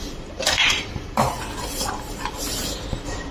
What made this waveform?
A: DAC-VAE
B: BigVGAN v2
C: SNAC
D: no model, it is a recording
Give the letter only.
B